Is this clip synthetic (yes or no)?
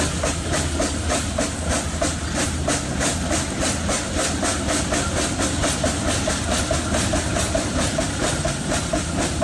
no